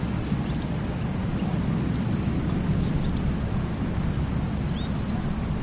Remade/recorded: recorded